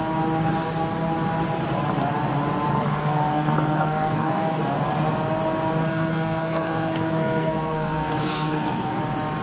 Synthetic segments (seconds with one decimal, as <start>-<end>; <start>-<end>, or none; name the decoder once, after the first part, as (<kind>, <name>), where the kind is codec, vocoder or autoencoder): 2.7-4.6 (codec, SNAC); 5.9-9.0